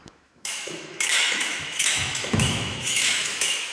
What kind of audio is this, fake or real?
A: fake